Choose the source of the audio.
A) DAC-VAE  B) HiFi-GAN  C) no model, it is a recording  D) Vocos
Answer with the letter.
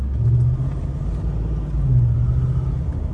C